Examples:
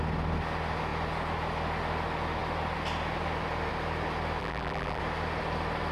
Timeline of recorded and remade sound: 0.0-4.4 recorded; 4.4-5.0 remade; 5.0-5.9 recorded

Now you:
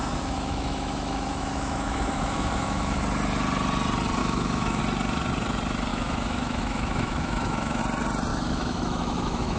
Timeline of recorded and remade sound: 0.0-3.0 remade; 3.0-4.2 recorded; 4.2-4.8 remade; 4.8-5.9 recorded; 5.9-7.8 remade; 7.8-8.3 recorded; 8.3-9.6 remade

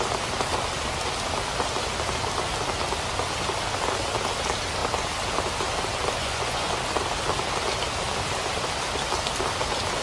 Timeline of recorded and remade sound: 0.0-6.2 recorded; 6.2-6.7 remade; 6.7-10.0 recorded

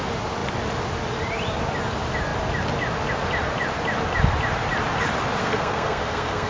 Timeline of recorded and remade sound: 0.0-5.4 recorded; 5.4-6.5 remade